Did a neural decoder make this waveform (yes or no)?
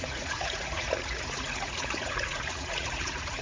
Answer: yes